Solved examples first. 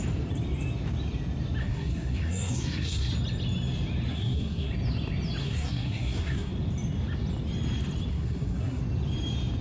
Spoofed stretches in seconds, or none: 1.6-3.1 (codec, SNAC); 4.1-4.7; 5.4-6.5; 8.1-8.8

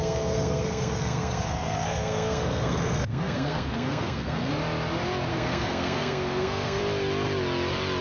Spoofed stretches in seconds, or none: 0.0-4.5 (codec, SNAC); 5.3-6.8

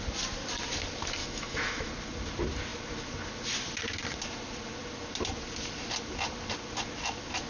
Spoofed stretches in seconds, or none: 1.2-1.9 (autoencoder, DAC-VAE)

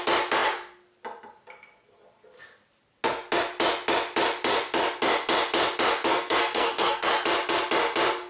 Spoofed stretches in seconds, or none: 6.1-7.1 (codec, SNAC)